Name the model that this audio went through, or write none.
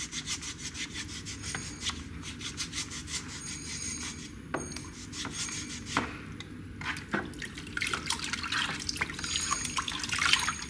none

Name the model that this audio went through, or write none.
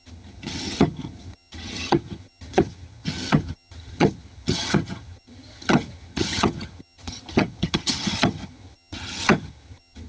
vocoder, HiFi-GAN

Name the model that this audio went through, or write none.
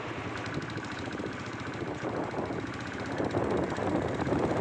none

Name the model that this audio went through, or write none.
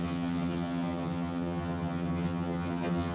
vocoder, HiFi-GAN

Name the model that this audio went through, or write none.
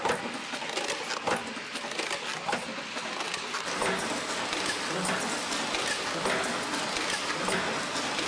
none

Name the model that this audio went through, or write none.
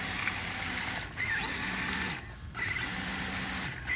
none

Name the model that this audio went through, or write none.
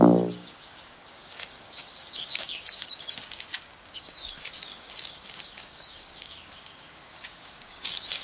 codec, DAC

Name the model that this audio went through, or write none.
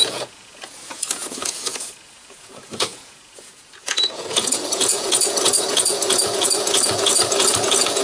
vocoder, Vocos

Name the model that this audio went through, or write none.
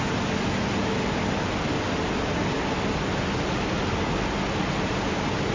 none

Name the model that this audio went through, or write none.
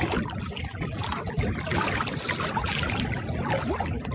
none